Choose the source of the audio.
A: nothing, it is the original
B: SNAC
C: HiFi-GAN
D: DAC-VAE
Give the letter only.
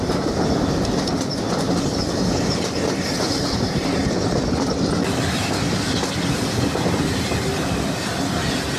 A